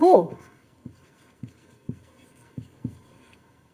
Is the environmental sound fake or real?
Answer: fake